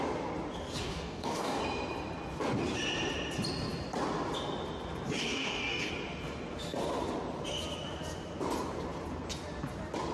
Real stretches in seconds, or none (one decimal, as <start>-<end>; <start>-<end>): 0.0-0.8; 1.6-5.2; 5.9-10.1